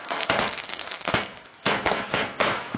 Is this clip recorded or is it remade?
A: remade